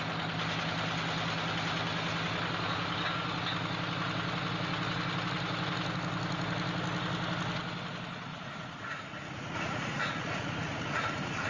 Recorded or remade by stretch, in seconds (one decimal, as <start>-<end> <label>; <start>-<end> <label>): 0.0-8.3 recorded; 8.3-11.5 remade